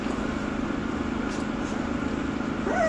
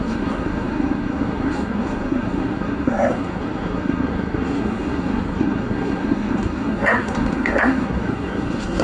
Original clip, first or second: first